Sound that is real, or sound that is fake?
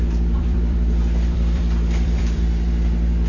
fake